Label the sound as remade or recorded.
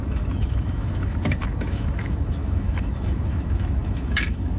remade